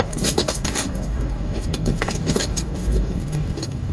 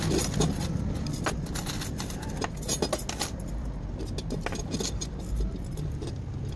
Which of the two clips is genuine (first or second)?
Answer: second